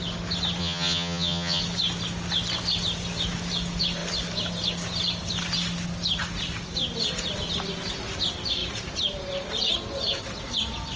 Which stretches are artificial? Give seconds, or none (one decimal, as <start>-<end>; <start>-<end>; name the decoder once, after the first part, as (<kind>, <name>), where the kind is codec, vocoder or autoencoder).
0.6-1.6 (vocoder, HiFi-GAN)